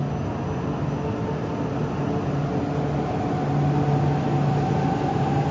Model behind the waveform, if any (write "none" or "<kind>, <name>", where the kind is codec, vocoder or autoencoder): none